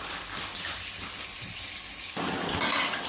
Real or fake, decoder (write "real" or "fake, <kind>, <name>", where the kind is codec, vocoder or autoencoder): real